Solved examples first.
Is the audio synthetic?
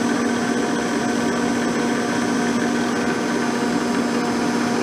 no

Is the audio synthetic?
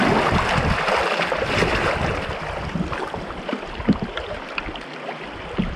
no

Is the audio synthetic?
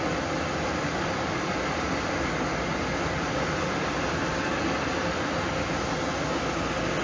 no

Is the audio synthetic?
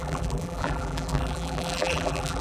yes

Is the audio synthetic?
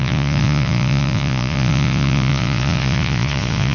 yes